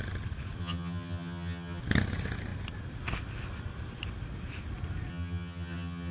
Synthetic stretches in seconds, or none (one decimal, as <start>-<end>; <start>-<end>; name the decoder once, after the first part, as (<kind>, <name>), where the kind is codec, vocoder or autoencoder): 0.6-1.8 (vocoder, HiFi-GAN); 5.1-6.1